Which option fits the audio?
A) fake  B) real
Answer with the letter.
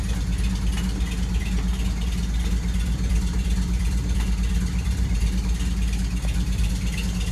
B